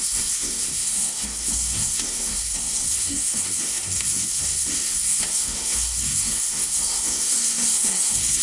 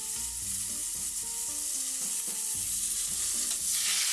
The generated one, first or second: first